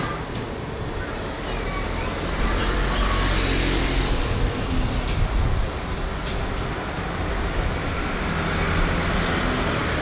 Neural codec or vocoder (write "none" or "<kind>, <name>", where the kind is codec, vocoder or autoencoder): none